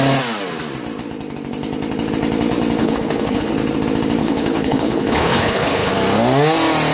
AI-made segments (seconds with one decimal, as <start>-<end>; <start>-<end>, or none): 2.8-3.5; 4.2-5.9